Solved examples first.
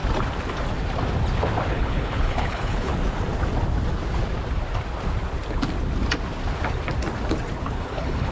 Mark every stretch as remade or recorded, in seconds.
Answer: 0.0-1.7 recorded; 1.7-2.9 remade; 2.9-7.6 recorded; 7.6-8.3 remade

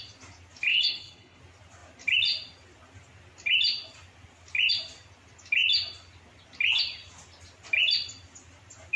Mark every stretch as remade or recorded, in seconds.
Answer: 0.0-0.7 recorded; 0.7-1.4 remade; 1.4-9.0 recorded

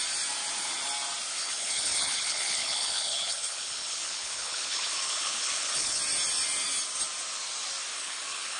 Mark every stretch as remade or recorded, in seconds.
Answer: 0.0-1.4 recorded; 1.4-6.0 remade; 6.0-7.9 recorded; 7.9-8.6 remade

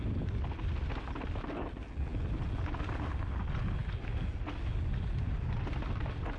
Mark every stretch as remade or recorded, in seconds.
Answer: 0.0-6.4 recorded

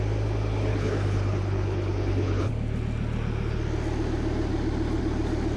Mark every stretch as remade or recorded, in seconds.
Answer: 0.0-0.7 recorded; 0.7-2.5 remade; 2.5-5.6 recorded

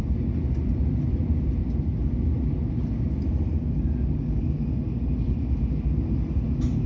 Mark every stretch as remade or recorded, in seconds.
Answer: 0.0-6.9 recorded

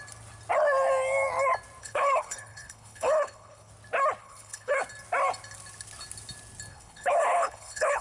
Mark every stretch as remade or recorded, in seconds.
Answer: 0.0-1.8 recorded; 1.8-3.7 remade; 3.7-4.2 recorded; 4.2-4.8 remade; 4.8-6.7 recorded; 6.7-8.0 remade

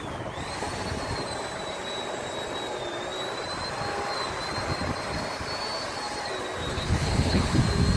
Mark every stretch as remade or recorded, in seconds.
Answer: 0.0-6.7 recorded; 6.7-7.6 remade; 7.6-8.0 recorded